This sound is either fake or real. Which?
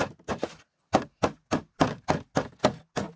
real